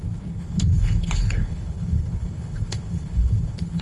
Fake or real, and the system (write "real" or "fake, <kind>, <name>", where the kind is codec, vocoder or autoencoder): fake, codec, HILCodec